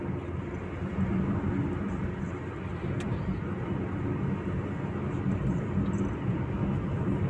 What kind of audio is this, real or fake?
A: real